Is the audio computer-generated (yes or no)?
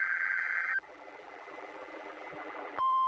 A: yes